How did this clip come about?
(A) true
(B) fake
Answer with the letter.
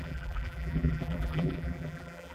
B